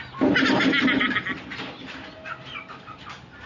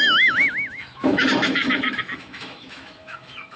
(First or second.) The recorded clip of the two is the first